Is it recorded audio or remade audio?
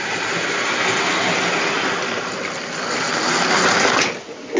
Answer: recorded